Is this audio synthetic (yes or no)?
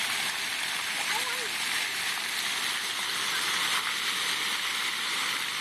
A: no